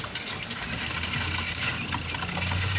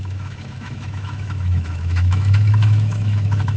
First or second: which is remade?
second